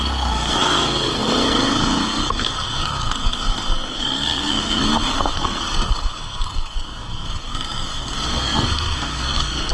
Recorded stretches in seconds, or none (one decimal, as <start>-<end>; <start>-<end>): none